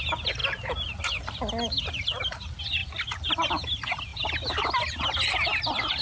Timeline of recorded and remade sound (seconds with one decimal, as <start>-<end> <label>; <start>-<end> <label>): 0.0-6.0 recorded